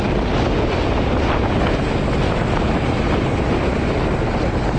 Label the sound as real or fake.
real